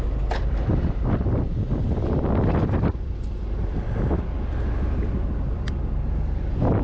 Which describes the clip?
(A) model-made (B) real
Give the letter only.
B